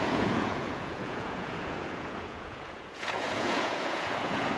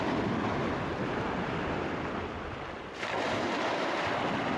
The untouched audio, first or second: second